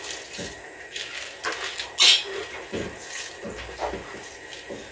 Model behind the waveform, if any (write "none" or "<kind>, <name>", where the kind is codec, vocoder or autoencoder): none